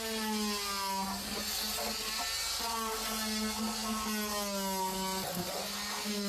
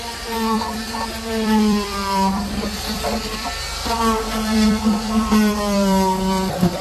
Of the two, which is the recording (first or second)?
first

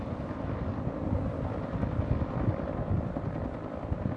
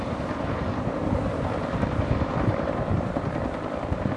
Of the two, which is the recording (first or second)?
first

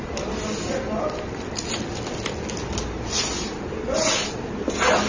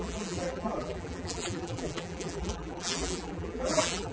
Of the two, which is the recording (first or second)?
first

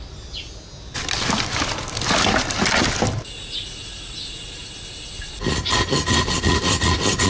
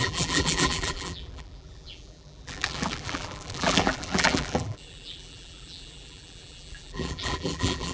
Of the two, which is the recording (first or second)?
first